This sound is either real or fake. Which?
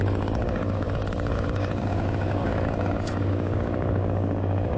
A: fake